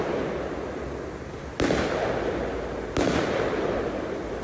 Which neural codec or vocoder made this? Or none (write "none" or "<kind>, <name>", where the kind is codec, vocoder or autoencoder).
none